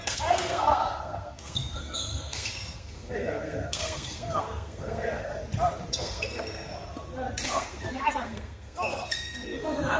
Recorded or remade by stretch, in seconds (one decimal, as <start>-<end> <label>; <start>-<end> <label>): 0.0-5.3 remade; 5.3-5.9 recorded; 5.9-6.7 remade; 6.7-7.5 recorded; 7.5-10.0 remade